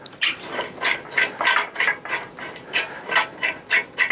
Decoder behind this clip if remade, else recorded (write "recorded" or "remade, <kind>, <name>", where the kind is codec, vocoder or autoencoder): recorded